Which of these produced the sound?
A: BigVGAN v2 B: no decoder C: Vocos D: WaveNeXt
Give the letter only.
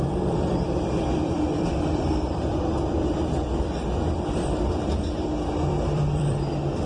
A